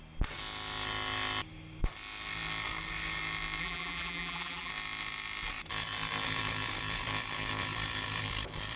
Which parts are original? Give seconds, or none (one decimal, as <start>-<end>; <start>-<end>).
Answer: 0.0-3.6; 4.7-8.8

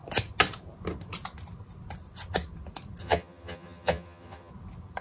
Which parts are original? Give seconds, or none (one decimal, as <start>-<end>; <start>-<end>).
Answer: 0.0-3.0; 4.5-5.0

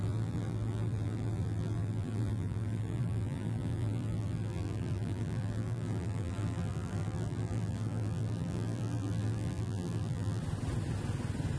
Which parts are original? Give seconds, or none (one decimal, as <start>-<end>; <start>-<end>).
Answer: 10.4-11.6

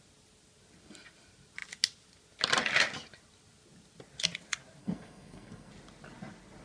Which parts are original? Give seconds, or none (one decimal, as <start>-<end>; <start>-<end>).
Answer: 0.0-4.8; 5.7-6.6

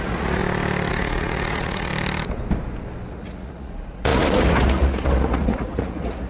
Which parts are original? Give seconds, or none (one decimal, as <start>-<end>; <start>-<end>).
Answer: 0.4-0.9; 1.9-3.1

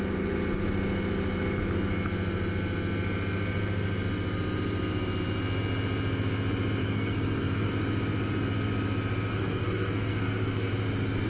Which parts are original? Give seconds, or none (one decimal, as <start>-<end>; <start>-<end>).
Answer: 0.0-6.8; 7.7-9.3; 10.7-11.3

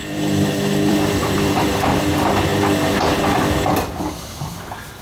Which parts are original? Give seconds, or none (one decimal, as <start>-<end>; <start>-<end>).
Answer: 2.0-5.0